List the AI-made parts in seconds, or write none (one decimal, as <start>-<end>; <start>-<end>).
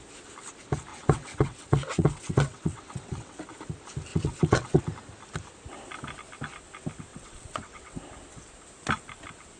0.9-3.4; 4.1-4.8; 7.1-8.0